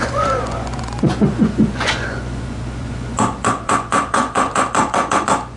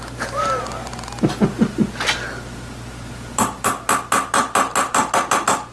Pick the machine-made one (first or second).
first